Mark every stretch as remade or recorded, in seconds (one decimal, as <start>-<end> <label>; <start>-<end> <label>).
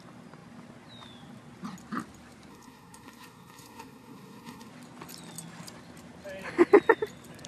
0.0-2.5 recorded; 2.5-4.7 remade; 4.7-7.5 recorded